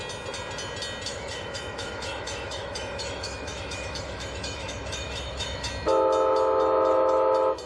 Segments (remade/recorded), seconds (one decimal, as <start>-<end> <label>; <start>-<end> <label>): 0.0-1.1 recorded; 1.1-5.7 remade; 5.7-7.7 recorded